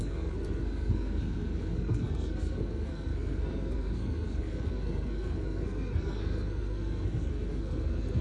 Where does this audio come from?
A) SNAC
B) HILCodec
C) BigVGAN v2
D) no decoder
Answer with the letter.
A